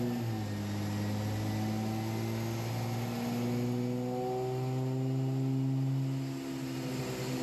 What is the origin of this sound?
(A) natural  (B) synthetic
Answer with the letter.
A